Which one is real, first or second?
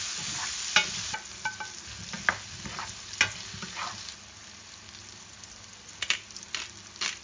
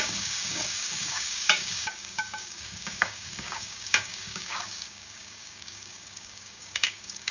first